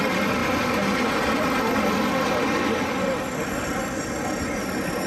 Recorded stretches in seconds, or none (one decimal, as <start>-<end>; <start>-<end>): 0.4-3.5